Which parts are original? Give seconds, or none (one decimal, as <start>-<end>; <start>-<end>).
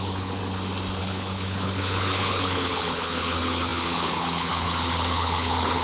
0.4-1.0